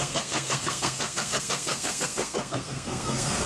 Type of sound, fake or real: fake